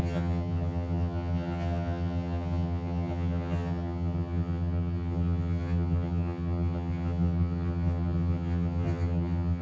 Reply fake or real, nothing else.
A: fake